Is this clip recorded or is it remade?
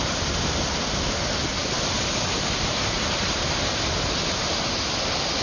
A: recorded